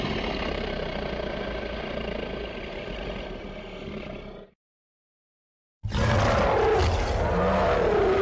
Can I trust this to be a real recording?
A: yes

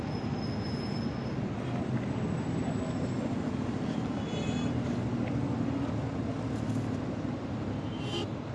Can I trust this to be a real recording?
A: yes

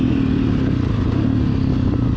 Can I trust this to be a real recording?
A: yes